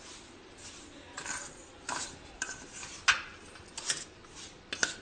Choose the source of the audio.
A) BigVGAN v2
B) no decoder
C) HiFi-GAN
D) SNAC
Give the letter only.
B